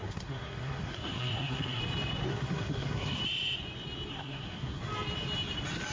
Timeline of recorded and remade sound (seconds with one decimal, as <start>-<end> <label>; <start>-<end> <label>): 0.0-1.8 remade; 1.8-2.3 recorded; 2.3-3.2 remade; 3.2-4.1 recorded; 4.1-4.8 remade; 4.8-5.9 recorded